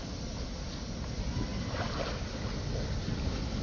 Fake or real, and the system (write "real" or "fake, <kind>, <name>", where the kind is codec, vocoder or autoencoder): real